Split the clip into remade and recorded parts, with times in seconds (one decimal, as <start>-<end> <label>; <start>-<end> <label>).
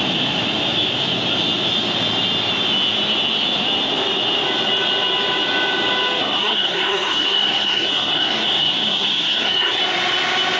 0.0-6.2 recorded; 6.2-9.8 remade; 9.8-10.6 recorded